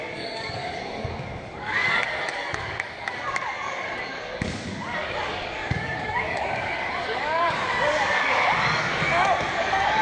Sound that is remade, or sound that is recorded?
remade